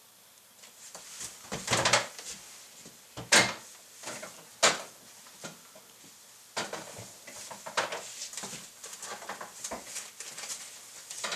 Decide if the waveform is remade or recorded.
recorded